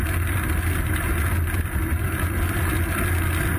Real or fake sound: real